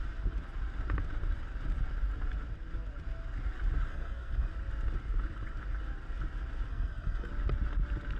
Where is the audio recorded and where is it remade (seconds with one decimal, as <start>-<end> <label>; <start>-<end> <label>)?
0.0-3.9 recorded; 3.9-4.5 remade; 4.5-6.7 recorded; 6.7-7.3 remade; 7.3-8.2 recorded

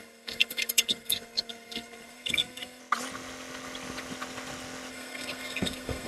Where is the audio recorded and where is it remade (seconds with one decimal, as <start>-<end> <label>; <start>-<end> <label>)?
0.0-2.8 remade; 2.8-4.9 recorded; 4.9-6.1 remade